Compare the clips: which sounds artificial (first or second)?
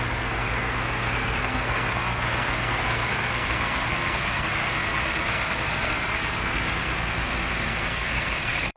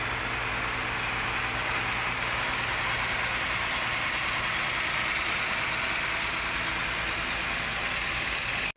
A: first